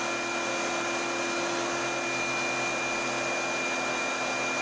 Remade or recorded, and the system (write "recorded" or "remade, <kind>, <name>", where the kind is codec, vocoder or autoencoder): recorded